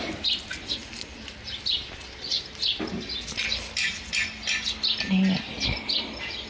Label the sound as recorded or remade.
recorded